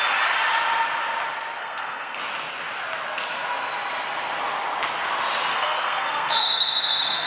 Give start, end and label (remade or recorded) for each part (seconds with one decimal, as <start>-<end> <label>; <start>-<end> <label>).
0.0-1.6 recorded; 1.6-2.2 remade; 2.2-5.5 recorded; 5.5-7.3 remade

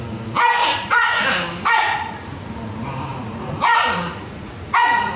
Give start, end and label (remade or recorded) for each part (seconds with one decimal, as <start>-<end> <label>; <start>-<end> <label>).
0.0-0.6 recorded; 0.6-1.2 remade; 1.2-1.8 recorded; 1.8-2.5 remade; 2.5-3.1 recorded; 3.1-5.2 remade

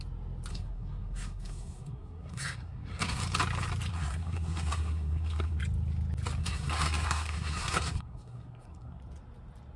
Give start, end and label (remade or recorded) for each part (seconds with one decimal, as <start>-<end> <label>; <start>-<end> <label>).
0.0-0.5 recorded; 0.5-3.2 remade; 3.2-3.9 recorded; 3.9-5.6 remade; 5.6-6.4 recorded; 6.4-9.0 remade; 9.0-9.8 recorded

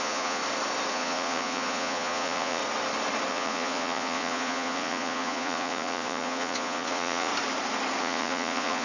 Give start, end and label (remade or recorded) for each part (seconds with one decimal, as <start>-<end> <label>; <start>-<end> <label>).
0.0-0.4 remade; 0.4-0.9 recorded; 0.9-2.6 remade; 2.6-3.3 recorded; 3.3-7.3 remade; 7.3-8.0 recorded; 8.0-8.8 remade

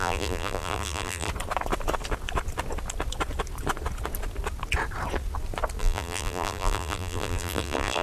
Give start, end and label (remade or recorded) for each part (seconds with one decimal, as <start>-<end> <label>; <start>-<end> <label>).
0.0-1.3 remade; 1.3-5.8 recorded; 5.8-8.0 remade

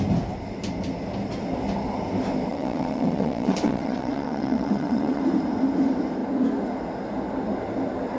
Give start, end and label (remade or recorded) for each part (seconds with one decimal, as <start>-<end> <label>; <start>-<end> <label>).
0.0-2.5 recorded; 2.5-5.2 remade; 5.2-8.2 recorded

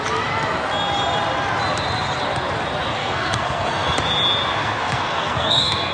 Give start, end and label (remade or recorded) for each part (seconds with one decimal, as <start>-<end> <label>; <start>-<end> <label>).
0.0-3.0 recorded; 3.0-4.0 remade; 4.0-4.6 recorded; 4.6-5.9 remade

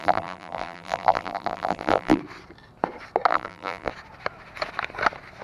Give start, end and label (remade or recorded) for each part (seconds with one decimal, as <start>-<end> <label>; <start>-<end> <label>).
0.0-2.2 remade; 2.2-3.3 recorded; 3.3-3.9 remade; 3.9-5.4 recorded